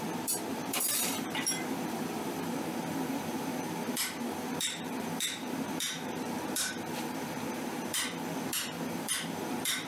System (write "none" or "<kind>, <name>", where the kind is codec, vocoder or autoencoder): vocoder, BigVGAN v2